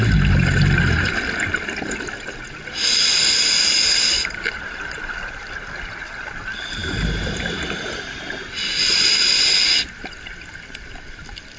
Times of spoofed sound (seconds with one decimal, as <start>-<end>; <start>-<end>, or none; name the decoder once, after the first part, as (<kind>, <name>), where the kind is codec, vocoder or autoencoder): none